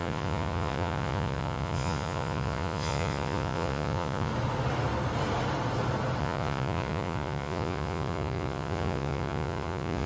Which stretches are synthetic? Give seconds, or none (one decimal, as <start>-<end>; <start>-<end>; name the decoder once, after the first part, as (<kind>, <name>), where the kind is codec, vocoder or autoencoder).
0.0-4.3 (vocoder, Vocos); 6.2-10.1